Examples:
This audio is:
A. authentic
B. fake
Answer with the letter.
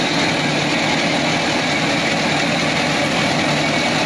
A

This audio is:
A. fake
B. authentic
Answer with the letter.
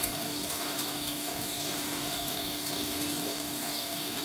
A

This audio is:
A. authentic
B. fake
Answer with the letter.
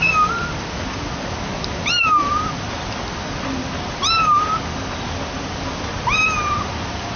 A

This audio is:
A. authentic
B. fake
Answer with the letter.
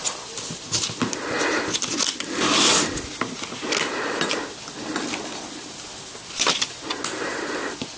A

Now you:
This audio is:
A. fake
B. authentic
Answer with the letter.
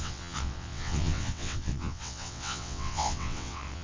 A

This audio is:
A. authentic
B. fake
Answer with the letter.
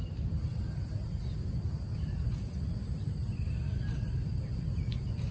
A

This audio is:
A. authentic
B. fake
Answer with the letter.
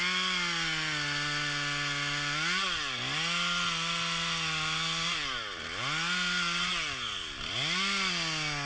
A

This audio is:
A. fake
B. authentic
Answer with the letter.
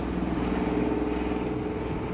B